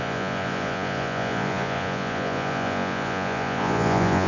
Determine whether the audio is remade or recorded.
remade